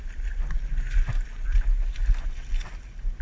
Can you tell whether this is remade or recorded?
recorded